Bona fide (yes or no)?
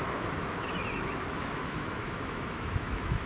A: no